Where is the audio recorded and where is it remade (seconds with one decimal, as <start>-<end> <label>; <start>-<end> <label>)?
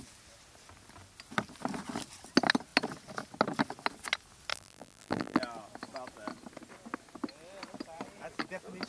0.0-4.5 recorded; 4.5-5.4 remade; 5.4-8.9 recorded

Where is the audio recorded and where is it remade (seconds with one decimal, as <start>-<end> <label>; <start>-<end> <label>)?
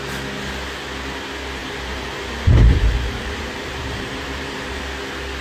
0.0-1.6 recorded; 1.6-4.8 remade; 4.8-5.4 recorded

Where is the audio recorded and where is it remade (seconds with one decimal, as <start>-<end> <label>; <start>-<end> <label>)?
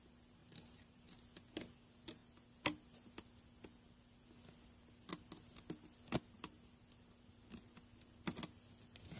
0.0-0.4 recorded; 0.4-1.0 remade; 1.0-9.2 recorded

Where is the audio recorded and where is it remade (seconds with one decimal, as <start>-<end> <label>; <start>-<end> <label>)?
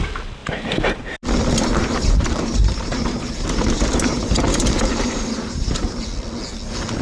0.0-1.8 recorded; 1.8-6.0 remade; 6.0-7.0 recorded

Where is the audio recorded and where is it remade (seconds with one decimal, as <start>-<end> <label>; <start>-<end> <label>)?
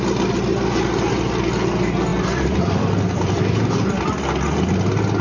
0.0-2.1 recorded; 2.1-3.7 remade; 3.7-5.2 recorded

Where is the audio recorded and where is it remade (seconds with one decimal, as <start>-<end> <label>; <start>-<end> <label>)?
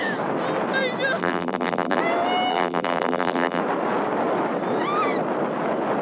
0.0-1.2 recorded; 1.2-2.0 remade; 2.0-2.5 recorded; 2.5-3.6 remade; 3.6-6.0 recorded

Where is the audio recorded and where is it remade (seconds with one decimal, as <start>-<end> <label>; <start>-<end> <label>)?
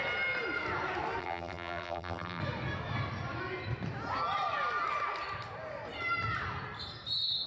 0.0-1.2 recorded; 1.2-2.4 remade; 2.4-7.5 recorded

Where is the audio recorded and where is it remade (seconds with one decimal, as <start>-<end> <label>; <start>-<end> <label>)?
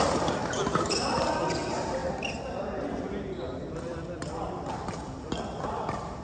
0.0-2.0 remade; 2.0-3.3 recorded; 3.3-6.2 remade